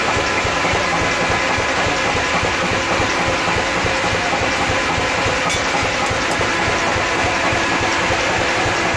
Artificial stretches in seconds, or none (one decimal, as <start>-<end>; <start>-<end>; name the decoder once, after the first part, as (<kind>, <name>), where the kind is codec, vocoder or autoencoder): none